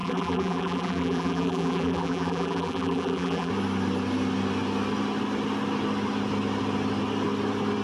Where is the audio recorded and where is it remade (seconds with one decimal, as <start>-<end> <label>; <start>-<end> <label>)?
0.0-3.5 remade; 3.5-7.8 recorded